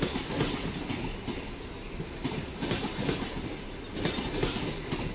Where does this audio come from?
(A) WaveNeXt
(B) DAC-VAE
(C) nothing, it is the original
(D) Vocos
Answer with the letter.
C